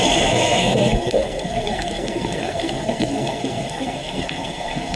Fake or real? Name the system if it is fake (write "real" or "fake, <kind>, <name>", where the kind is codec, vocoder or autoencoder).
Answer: fake, codec, SNAC